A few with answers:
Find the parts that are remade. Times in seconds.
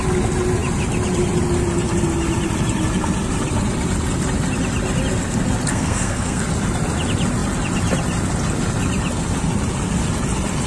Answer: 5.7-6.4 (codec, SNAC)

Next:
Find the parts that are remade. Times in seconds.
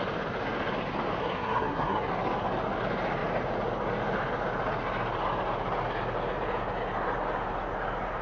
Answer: 1.2-2.1 (codec, SNAC)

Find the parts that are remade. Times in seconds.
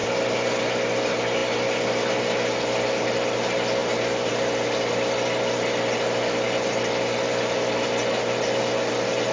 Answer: none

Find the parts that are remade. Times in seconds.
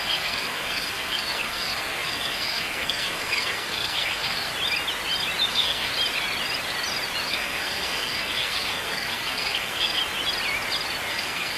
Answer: 0.0-4.5 (codec, SNAC); 5.5-5.9; 7.3-10.0; 11.1-11.6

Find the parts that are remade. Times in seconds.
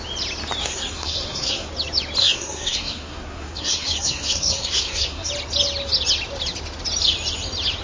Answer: 0.6-1.7 (codec, SNAC); 2.2-5.3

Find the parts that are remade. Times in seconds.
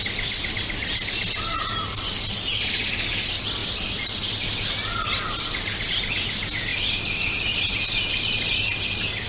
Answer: none